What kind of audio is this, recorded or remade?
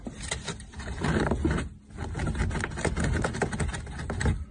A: recorded